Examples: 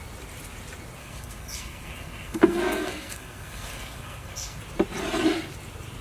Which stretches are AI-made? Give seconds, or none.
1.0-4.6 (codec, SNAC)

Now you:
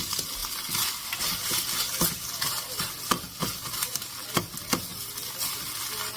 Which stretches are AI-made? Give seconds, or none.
none

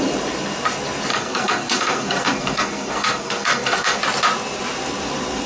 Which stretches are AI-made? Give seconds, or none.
1.1-4.0 (codec, SNAC)

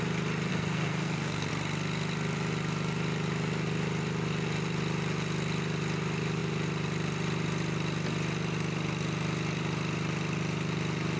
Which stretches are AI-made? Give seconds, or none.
0.5-1.5 (codec, SNAC)